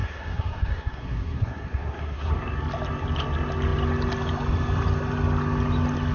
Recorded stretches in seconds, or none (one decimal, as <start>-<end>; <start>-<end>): 2.3-6.1